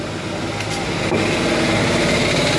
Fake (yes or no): no